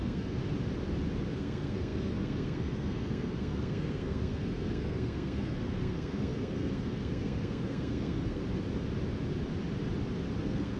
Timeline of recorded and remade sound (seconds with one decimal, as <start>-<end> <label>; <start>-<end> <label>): 0.0-0.4 remade; 0.4-1.3 recorded; 1.3-8.4 remade; 8.4-10.4 recorded; 10.4-10.8 remade